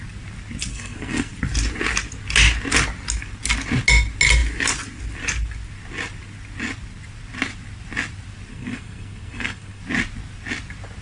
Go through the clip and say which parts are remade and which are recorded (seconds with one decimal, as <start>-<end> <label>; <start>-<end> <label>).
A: 0.0-0.7 recorded; 0.7-1.3 remade; 1.3-8.5 recorded; 8.5-9.8 remade; 9.8-11.0 recorded

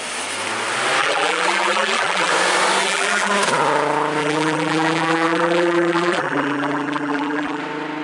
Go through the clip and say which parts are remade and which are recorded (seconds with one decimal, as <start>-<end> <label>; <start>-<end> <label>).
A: 0.0-1.0 recorded; 1.0-2.3 remade; 2.3-2.8 recorded; 2.8-3.3 remade; 3.3-4.2 recorded; 4.2-7.6 remade; 7.6-8.0 recorded

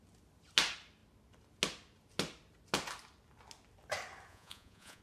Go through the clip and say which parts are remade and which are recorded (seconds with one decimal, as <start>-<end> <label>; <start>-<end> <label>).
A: 0.0-4.3 recorded; 4.3-5.0 remade

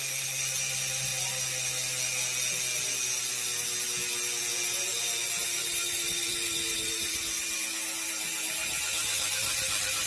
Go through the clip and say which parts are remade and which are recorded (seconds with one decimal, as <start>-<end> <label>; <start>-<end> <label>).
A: 0.0-5.4 recorded; 5.4-10.1 remade

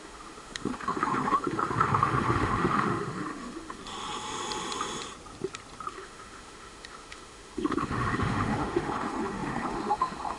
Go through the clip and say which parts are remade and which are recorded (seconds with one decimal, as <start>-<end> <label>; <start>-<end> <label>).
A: 0.0-3.8 remade; 3.8-5.9 recorded; 5.9-10.4 remade